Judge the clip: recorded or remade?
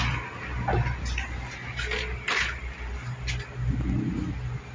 recorded